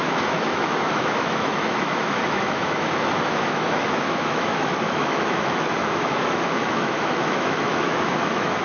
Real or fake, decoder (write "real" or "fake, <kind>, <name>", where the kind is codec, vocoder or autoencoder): fake, autoencoder, DAC-VAE